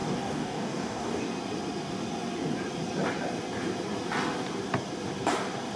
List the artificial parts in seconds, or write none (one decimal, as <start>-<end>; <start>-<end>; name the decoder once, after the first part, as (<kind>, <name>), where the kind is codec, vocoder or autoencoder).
0.0-1.3 (codec, DAC)